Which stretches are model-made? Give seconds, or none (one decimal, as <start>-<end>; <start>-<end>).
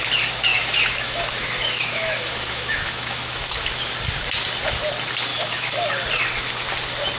0.5-3.9; 5.3-5.9